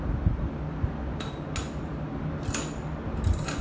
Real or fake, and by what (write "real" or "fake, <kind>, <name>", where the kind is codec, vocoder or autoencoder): real